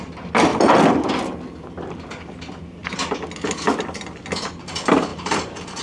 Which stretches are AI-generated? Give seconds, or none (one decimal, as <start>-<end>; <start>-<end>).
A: 5.1-5.8